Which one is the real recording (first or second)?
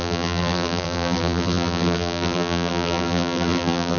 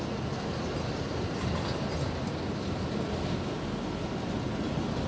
second